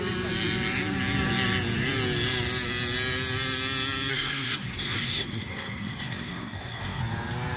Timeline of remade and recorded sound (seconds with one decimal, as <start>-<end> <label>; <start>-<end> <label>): 0.0-4.1 recorded; 4.1-7.0 remade; 7.0-7.6 recorded